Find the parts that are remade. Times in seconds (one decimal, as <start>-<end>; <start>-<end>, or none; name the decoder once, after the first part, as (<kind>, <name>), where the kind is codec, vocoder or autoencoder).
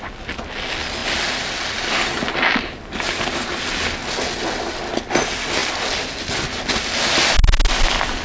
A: none